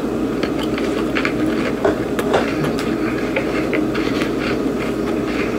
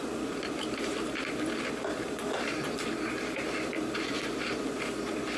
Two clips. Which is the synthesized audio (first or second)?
second